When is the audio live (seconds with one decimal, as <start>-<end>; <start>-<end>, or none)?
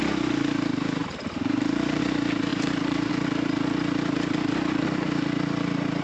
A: 0.0-1.0; 2.0-2.5; 3.1-6.0